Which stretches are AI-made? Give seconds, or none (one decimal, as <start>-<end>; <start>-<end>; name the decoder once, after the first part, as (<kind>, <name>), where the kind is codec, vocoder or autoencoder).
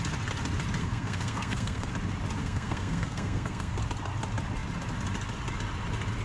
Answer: 0.8-1.9 (codec, SNAC); 2.4-3.8